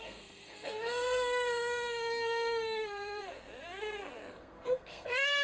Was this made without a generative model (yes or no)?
no